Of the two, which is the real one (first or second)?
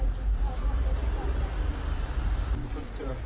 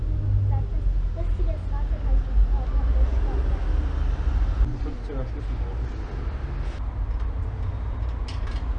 second